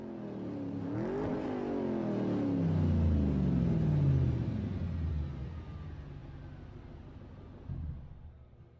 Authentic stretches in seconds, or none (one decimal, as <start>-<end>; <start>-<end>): 0.0-8.8